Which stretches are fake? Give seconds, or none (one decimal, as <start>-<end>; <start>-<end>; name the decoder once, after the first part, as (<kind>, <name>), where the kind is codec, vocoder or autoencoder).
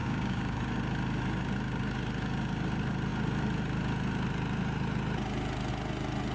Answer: 0.0-0.6 (codec, DAC)